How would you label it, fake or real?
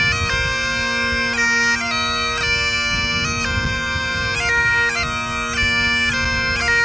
real